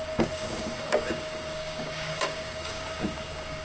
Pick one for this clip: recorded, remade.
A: remade